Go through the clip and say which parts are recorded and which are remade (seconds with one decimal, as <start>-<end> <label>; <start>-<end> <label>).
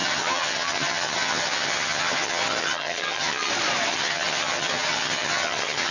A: 0.0-3.5 remade; 3.5-3.9 recorded; 3.9-5.9 remade